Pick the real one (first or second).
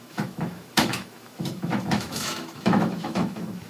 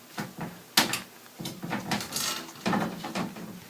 second